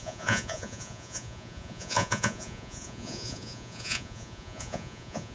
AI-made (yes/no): yes